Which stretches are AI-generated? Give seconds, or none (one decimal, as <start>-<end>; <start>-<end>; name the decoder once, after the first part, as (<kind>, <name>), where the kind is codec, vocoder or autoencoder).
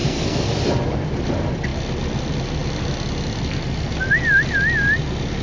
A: 0.0-0.5 (codec, SNAC)